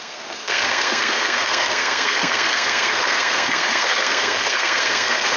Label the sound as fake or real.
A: fake